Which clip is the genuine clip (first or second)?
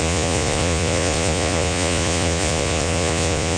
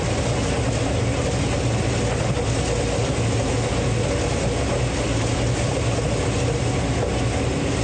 second